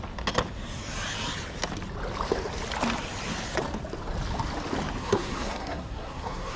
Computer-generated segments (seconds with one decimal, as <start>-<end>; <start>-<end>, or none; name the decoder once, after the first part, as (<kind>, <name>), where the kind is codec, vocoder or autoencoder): 5.0-6.6 (codec, SNAC)